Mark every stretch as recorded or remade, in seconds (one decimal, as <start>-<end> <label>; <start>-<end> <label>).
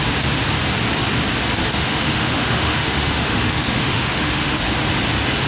0.0-1.6 recorded; 1.6-4.7 remade; 4.7-5.5 recorded